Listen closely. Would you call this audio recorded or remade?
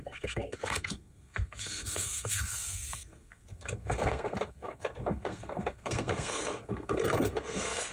remade